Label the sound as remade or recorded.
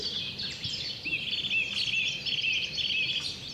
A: recorded